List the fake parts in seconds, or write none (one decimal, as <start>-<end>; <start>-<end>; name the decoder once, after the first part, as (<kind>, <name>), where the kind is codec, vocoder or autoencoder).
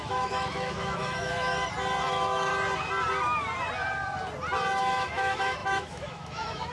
0.0-1.5 (autoencoder, DAC-VAE); 2.1-2.5; 4.8-6.7